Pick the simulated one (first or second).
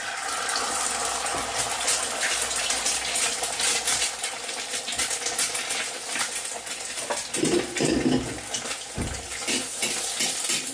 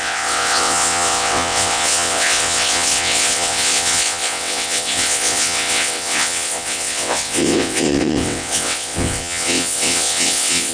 second